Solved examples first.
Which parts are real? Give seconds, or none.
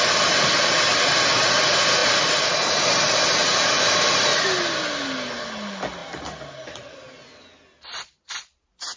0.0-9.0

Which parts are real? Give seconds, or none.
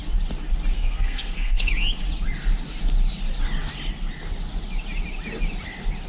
0.0-0.7; 1.7-6.1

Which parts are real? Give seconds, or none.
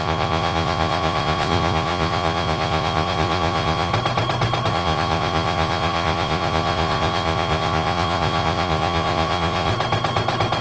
3.9-4.7; 9.7-10.6